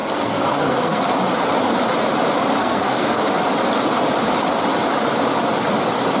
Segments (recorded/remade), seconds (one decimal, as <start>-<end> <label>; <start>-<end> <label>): 0.0-1.1 remade; 1.1-2.6 recorded; 2.6-3.2 remade; 3.2-6.2 recorded